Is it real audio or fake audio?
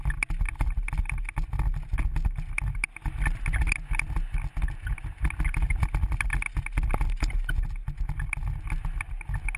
real